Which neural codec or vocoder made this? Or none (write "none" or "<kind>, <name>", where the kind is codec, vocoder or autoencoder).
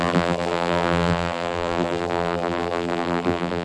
vocoder, BigVGAN v2